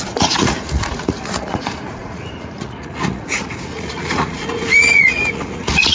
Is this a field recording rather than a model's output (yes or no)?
no